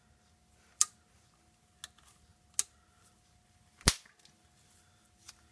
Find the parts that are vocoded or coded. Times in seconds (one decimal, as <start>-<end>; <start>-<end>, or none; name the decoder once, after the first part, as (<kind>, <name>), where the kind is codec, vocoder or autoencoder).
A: none